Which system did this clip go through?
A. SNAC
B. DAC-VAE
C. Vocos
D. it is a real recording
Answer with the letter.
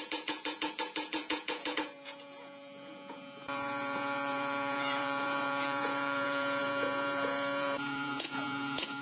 C